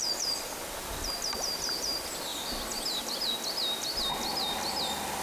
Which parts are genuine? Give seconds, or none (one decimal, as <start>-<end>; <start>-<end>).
1.3-2.3; 3.3-5.2